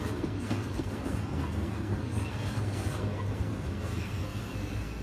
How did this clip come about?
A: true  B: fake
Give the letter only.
B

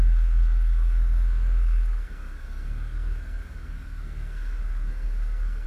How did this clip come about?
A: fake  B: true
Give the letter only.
A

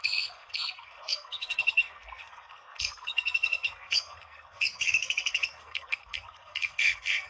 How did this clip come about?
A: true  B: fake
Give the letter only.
B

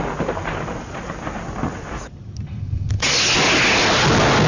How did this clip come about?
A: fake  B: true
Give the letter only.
B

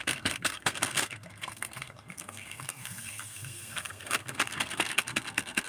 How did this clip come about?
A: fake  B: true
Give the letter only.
A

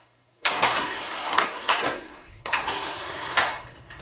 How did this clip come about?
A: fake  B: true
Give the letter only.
A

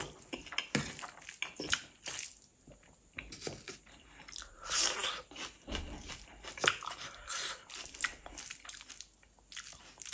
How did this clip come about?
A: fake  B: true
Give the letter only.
B